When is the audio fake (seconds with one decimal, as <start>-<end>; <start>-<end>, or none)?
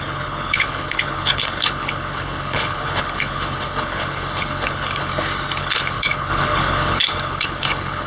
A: 0.0-5.1; 5.6-8.1